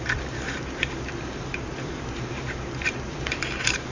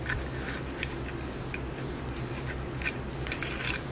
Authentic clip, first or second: second